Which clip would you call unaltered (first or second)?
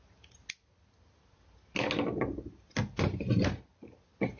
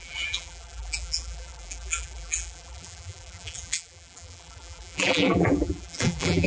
first